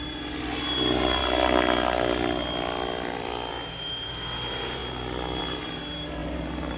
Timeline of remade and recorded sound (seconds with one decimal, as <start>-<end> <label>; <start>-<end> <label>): 0.0-1.2 remade; 1.2-3.5 recorded; 3.5-4.8 remade; 4.8-5.4 recorded; 5.4-6.8 remade